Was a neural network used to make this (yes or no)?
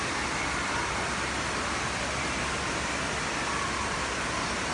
no